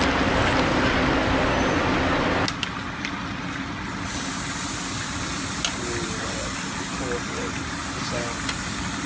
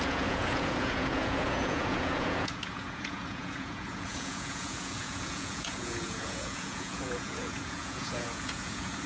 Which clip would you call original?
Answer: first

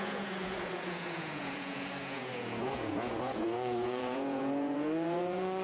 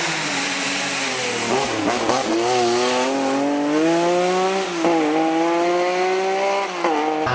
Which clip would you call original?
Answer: second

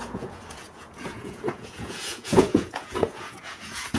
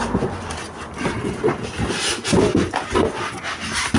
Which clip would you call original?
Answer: second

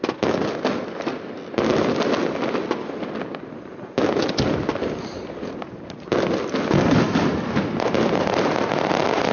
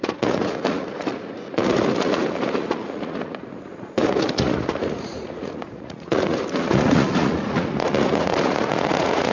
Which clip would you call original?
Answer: first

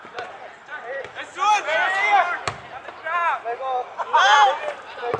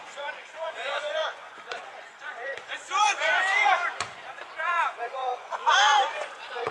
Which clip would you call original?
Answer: first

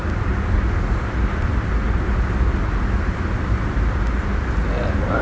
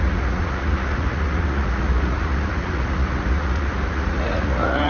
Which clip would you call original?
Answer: first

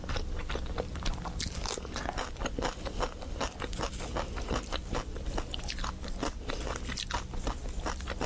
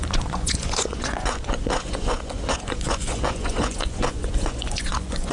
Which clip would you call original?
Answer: first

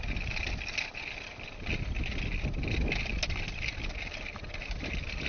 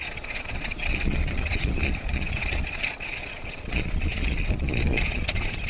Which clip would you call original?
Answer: first